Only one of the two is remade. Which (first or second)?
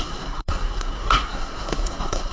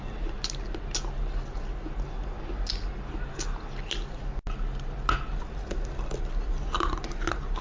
first